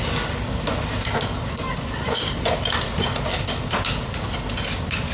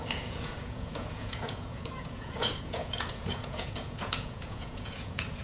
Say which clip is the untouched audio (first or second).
first